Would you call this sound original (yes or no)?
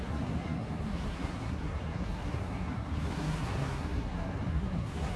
no